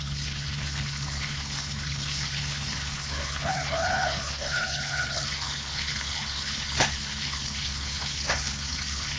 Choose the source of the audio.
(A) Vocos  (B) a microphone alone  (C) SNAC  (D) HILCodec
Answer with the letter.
D